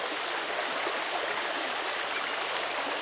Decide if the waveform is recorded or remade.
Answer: recorded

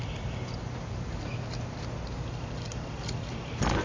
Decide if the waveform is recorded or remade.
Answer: recorded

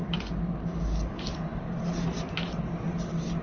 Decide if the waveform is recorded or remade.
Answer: recorded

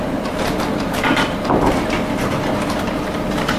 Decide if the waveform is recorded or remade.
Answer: remade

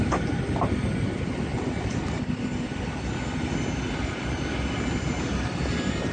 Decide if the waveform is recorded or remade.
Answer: recorded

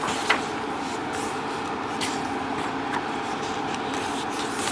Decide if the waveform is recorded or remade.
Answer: recorded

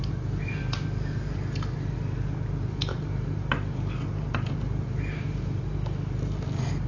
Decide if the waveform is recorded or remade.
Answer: recorded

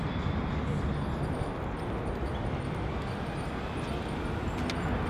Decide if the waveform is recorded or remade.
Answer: recorded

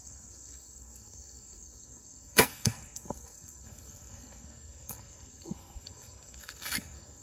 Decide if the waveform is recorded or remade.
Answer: remade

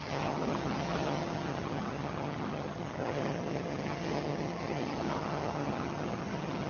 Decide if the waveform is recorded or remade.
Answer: remade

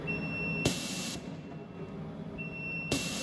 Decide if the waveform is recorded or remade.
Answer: recorded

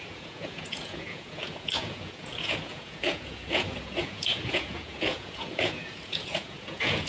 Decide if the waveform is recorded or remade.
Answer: remade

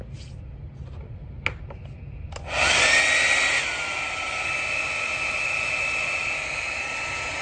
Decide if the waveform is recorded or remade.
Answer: recorded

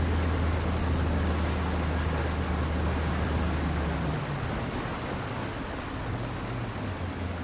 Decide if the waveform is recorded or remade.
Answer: recorded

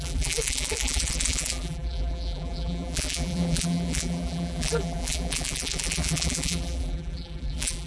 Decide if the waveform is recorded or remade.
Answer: remade